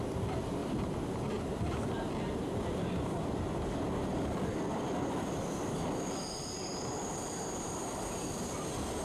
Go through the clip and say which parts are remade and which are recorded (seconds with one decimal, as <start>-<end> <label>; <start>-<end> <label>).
0.0-0.6 recorded; 0.6-3.4 remade; 3.4-4.1 recorded; 4.1-5.7 remade; 5.7-9.0 recorded